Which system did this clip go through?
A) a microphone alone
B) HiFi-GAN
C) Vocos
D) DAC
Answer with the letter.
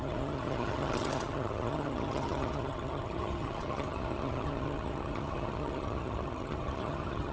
B